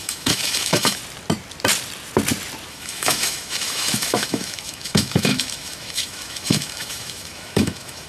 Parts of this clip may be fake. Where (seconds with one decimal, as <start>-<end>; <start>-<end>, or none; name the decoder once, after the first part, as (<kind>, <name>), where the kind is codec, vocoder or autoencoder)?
0.0-1.0 (autoencoder, DAC-VAE); 2.7-8.1